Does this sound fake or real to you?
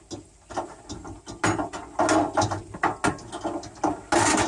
real